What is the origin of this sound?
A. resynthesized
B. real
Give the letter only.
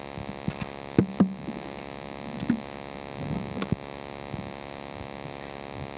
B